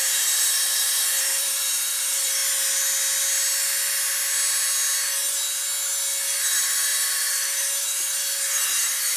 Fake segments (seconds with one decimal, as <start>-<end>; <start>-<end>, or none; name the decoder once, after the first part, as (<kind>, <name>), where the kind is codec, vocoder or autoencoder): 0.0-2.4 (vocoder, BigVGAN v2); 6.5-9.2